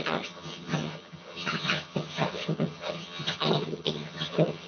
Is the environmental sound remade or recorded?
remade